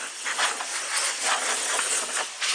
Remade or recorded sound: recorded